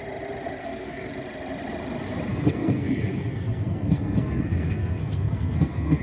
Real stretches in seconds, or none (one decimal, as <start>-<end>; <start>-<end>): 0.0-0.6; 1.1-2.3